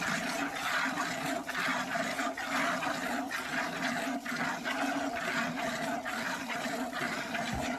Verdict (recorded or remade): recorded